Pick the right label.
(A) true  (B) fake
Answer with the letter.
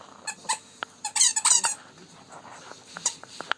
B